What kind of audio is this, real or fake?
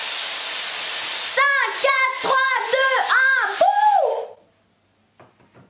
real